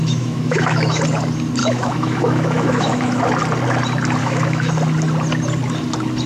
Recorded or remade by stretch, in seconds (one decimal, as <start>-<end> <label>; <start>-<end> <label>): 0.0-1.0 remade; 1.0-1.6 recorded; 1.6-3.2 remade; 3.2-4.2 recorded; 4.2-4.7 remade; 4.7-6.3 recorded